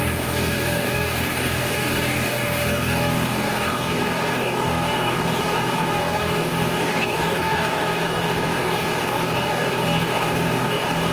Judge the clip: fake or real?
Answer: fake